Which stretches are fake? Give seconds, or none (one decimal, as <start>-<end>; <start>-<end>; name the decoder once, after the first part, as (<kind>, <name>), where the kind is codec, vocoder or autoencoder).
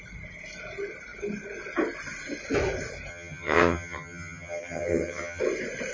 3.1-5.4 (vocoder, HiFi-GAN)